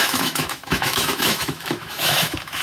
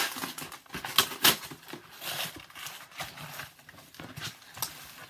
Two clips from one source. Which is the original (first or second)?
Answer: second